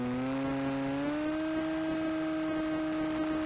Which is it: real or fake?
real